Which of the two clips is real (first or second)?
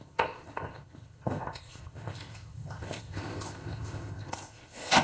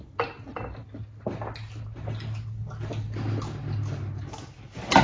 second